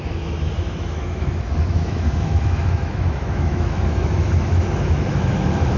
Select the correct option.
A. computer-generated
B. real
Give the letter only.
A